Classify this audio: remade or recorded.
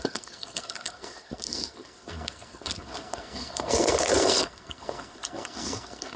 remade